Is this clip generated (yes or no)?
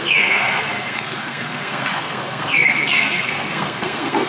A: yes